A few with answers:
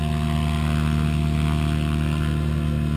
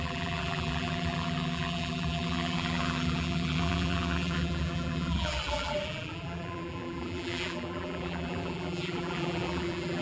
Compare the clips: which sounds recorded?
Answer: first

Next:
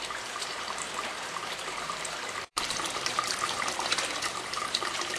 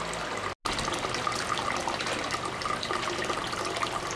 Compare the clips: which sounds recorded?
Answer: second